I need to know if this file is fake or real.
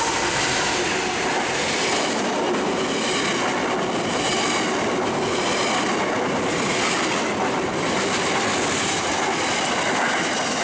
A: real